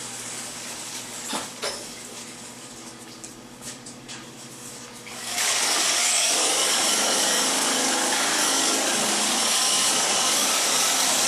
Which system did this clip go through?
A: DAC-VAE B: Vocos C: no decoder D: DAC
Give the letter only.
D